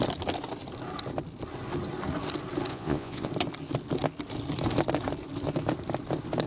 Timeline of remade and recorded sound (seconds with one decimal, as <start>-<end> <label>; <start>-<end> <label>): 0.0-2.7 recorded; 2.7-3.3 remade; 3.3-6.5 recorded